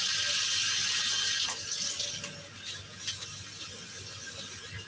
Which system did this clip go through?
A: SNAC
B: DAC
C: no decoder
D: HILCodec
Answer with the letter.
C